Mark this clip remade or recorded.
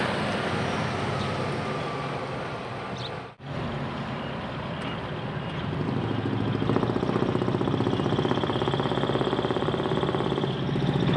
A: recorded